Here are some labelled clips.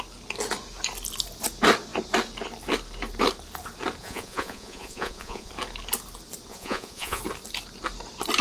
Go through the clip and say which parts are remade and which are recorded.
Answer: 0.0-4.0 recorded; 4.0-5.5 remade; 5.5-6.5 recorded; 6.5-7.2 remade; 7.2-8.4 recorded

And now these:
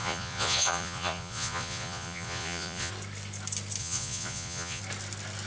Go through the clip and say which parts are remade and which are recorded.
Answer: 0.0-2.9 remade; 2.9-3.8 recorded; 3.8-4.8 remade; 4.8-5.5 recorded

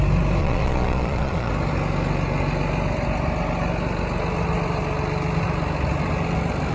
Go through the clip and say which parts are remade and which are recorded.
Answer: 0.0-0.4 recorded; 0.4-1.5 remade; 1.5-6.7 recorded

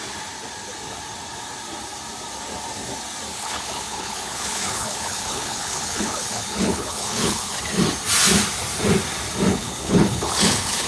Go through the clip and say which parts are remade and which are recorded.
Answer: 0.0-3.3 recorded; 3.3-7.6 remade; 7.6-9.5 recorded; 9.5-10.9 remade

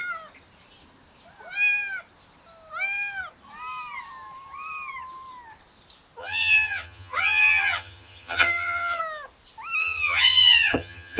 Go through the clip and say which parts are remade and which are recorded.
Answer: 0.0-6.2 recorded; 6.2-9.0 remade; 9.0-9.8 recorded; 9.8-11.2 remade

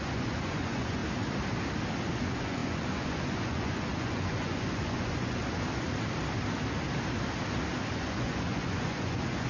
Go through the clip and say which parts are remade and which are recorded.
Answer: 0.0-1.0 remade; 1.0-2.1 recorded; 2.1-5.4 remade; 5.4-7.9 recorded; 7.9-9.5 remade